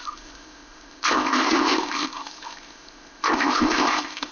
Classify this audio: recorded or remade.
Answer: remade